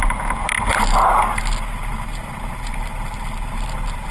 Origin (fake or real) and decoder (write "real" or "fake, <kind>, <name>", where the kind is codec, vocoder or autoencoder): real